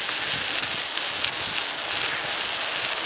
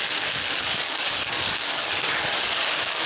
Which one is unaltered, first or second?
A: first